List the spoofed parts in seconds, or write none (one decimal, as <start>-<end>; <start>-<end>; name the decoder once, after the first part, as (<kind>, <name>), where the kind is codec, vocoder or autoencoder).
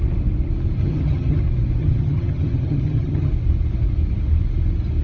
0.8-1.4 (vocoder, HiFi-GAN); 1.8-3.3